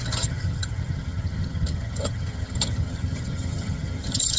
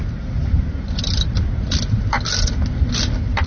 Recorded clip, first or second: second